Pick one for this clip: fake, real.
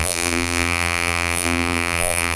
fake